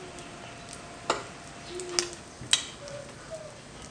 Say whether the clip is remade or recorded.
recorded